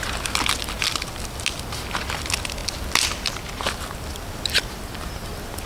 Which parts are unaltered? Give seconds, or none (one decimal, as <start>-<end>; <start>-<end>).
0.0-5.7